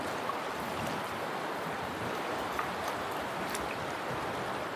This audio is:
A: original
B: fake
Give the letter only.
A